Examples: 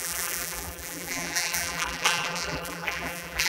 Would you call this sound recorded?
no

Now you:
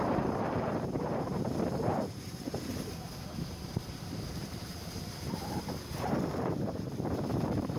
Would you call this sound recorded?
no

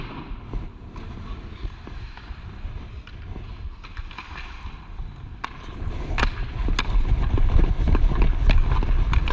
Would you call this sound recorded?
yes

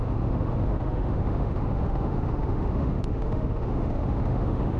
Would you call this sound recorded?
no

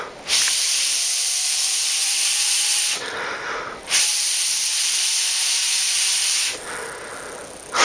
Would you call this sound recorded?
yes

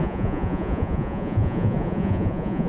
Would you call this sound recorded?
no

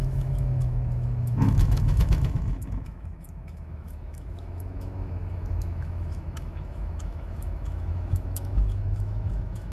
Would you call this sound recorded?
no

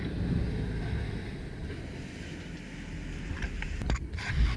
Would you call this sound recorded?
yes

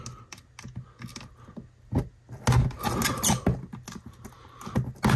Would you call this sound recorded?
yes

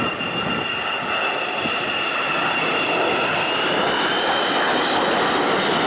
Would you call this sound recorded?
yes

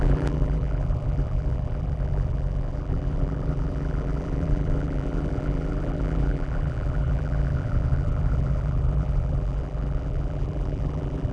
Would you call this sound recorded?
no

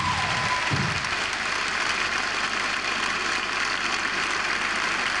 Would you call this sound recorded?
yes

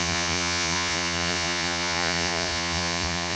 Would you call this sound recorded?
no